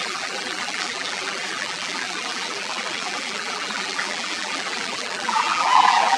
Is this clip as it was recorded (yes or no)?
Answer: no